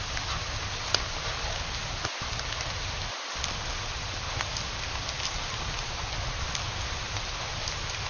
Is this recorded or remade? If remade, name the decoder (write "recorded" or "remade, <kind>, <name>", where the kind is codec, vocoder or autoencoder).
recorded